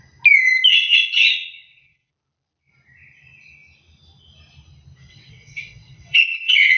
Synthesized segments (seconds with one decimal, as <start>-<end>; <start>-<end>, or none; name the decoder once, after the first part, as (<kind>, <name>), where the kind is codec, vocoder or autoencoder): 0.7-2.1 (vocoder, WaveNeXt); 5.1-6.8